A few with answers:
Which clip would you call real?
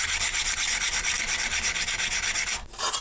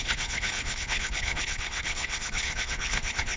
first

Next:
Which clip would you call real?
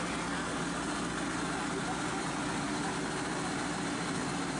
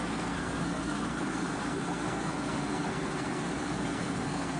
first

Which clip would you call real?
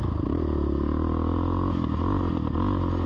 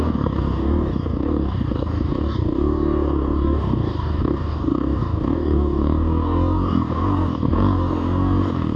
first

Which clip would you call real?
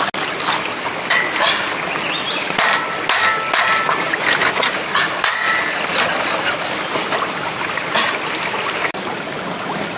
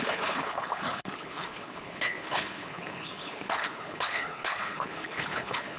first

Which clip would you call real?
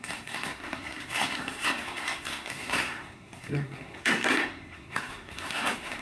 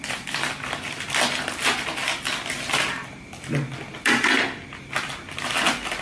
second